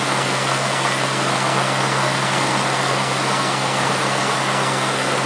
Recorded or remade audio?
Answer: remade